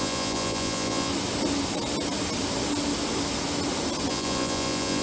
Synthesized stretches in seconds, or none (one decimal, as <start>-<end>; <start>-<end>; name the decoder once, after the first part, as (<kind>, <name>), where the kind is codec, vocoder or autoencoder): 0.0-1.1 (vocoder, Vocos); 4.1-5.0